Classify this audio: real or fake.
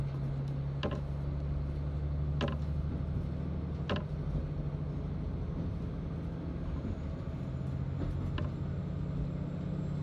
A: real